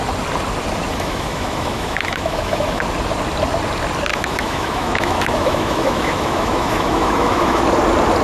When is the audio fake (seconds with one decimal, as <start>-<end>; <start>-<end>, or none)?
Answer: 0.9-2.8; 4.1-7.6